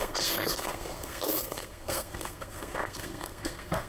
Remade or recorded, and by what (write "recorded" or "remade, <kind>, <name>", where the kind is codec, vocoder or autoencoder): remade, codec, SNAC